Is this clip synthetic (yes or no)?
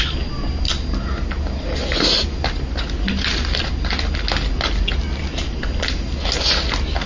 no